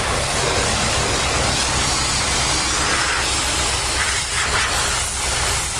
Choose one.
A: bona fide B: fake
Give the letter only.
A